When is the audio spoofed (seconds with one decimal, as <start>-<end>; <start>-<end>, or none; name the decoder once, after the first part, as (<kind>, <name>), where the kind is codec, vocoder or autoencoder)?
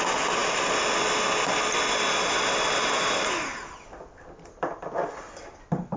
none